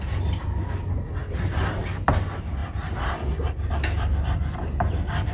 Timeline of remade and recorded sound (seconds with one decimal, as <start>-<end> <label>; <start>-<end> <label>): 0.0-1.2 recorded; 1.2-1.8 remade; 1.8-2.6 recorded; 2.6-5.3 remade